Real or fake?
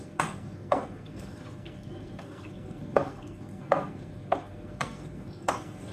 fake